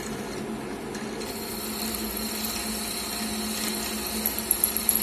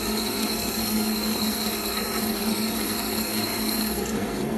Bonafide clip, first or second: first